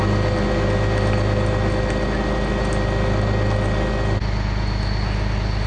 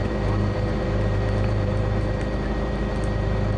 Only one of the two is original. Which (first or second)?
first